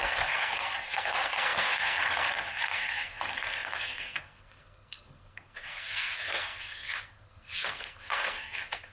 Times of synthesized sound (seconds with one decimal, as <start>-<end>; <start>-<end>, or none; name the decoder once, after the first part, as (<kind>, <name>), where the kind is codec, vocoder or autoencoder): 0.0-8.9 (codec, SNAC)